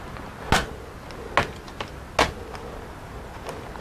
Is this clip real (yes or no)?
yes